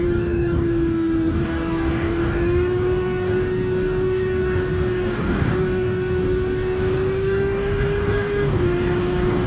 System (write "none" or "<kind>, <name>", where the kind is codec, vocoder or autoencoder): codec, DAC